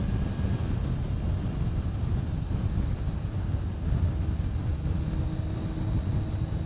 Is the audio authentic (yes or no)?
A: yes